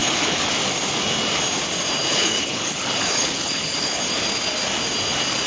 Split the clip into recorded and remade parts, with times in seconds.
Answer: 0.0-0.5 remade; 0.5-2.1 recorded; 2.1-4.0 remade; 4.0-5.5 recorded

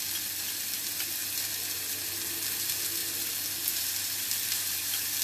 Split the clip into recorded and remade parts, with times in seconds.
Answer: 0.0-5.2 recorded

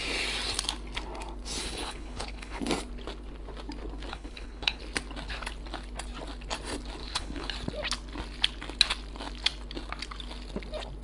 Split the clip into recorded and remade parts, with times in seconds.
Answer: 0.0-1.6 recorded; 1.6-2.6 remade; 2.6-4.1 recorded; 4.1-4.8 remade; 4.8-7.0 recorded; 7.0-7.5 remade; 7.5-11.0 recorded

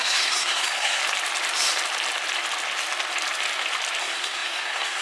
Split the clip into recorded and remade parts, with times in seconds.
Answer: 0.0-1.0 remade; 1.0-4.0 recorded; 4.0-5.0 remade